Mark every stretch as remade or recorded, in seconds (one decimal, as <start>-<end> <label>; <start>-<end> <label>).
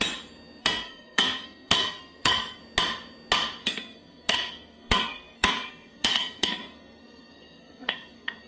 0.0-0.6 recorded; 0.6-2.6 remade; 2.6-3.6 recorded; 3.6-8.5 remade